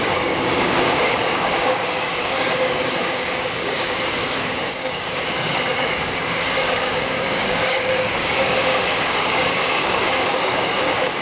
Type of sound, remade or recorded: remade